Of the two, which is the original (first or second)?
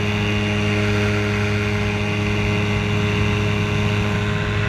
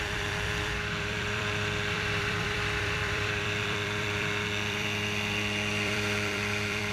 first